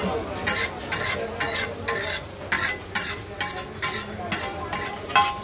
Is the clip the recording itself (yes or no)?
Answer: yes